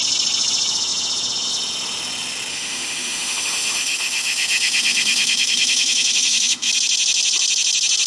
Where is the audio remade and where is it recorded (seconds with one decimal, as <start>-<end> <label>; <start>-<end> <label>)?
0.0-2.5 recorded; 2.5-6.7 remade; 6.7-8.1 recorded